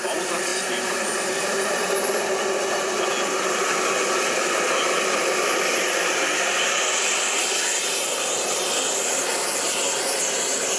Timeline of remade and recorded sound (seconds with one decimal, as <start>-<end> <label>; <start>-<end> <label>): 0.0-0.5 recorded; 0.5-1.9 remade; 1.9-10.8 recorded